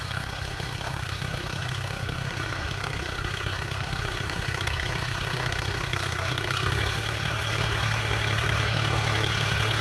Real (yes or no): no